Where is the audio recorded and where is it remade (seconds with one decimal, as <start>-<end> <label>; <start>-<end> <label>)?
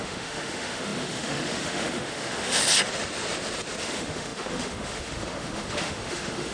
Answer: 0.0-2.6 remade; 2.6-3.8 recorded; 3.8-6.5 remade